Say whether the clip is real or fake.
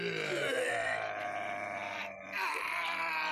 real